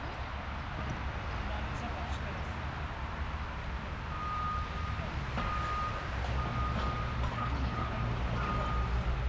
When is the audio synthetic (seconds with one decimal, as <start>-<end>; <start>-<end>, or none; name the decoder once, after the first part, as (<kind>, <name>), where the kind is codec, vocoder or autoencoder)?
7.3-7.9 (codec, HILCodec)